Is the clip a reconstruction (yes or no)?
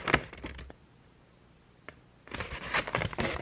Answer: no